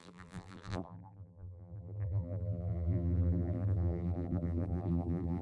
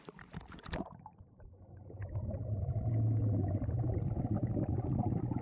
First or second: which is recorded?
second